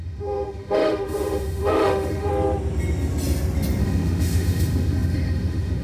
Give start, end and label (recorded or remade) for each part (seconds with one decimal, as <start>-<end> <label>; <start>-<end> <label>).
0.0-2.3 remade; 2.3-3.8 recorded; 3.8-5.8 remade

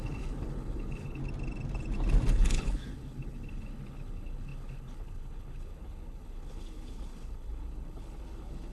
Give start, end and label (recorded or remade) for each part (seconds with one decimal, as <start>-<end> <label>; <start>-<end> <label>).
0.0-1.2 remade; 1.2-2.3 recorded; 2.3-8.7 remade

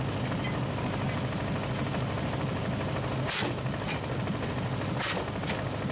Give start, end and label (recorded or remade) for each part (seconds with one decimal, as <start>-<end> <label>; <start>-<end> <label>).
0.0-5.9 recorded

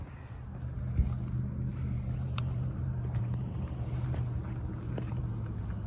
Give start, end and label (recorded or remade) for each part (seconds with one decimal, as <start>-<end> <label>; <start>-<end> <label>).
0.0-1.7 recorded; 1.7-5.2 remade; 5.2-5.9 recorded

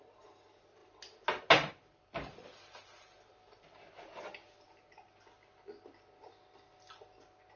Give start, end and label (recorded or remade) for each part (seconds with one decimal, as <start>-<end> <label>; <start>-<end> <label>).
0.0-7.6 recorded

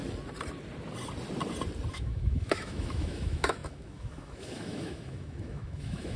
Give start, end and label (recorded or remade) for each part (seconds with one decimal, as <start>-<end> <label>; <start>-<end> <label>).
0.0-1.9 recorded; 1.9-6.2 remade

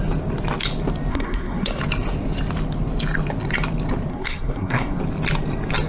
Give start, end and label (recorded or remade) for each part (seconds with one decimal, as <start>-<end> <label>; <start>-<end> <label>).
0.0-1.1 recorded; 1.1-1.8 remade; 1.8-4.1 recorded; 4.1-5.0 remade; 5.0-5.9 recorded